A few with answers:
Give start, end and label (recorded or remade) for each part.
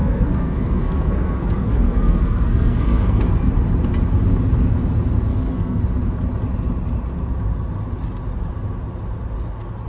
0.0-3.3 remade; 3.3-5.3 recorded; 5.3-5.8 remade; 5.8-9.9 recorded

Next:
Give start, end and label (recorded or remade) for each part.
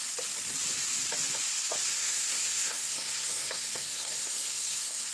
0.0-1.9 recorded; 1.9-5.1 remade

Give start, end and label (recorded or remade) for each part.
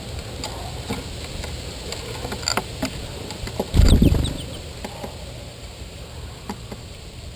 0.0-4.0 recorded; 4.0-4.7 remade; 4.7-5.5 recorded; 5.5-7.0 remade; 7.0-7.4 recorded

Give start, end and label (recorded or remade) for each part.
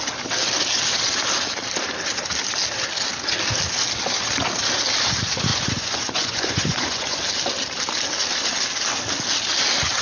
0.0-5.5 recorded; 5.5-7.2 remade; 7.2-10.0 recorded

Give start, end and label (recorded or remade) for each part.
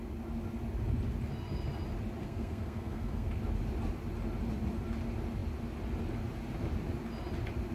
0.0-2.2 recorded; 2.2-3.3 remade; 3.3-7.7 recorded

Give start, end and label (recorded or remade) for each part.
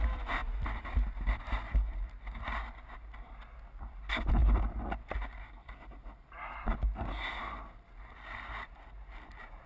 0.0-9.7 recorded